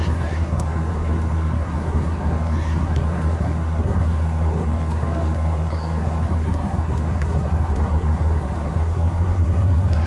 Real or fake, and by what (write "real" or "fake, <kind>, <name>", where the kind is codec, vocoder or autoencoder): fake, codec, SNAC